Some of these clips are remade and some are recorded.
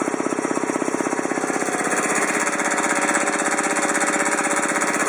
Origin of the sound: remade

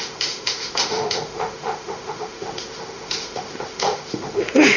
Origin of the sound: remade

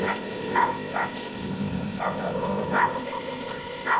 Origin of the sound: remade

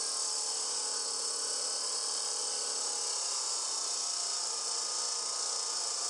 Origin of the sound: recorded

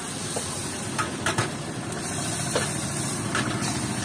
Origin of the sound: recorded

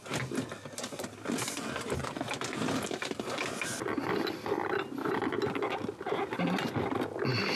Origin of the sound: recorded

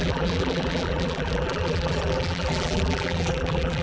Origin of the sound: remade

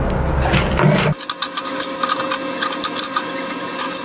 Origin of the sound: recorded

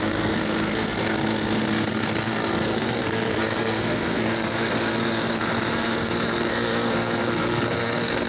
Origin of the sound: remade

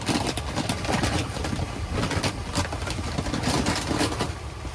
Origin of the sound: recorded